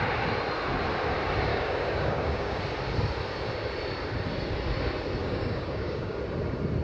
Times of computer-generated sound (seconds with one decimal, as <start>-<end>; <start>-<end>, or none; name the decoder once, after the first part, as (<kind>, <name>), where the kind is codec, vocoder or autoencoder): 1.5-2.6 (codec, DAC); 5.2-6.2